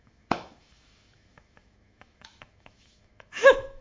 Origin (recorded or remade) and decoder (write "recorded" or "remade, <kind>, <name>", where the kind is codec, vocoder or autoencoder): remade, autoencoder, DAC-VAE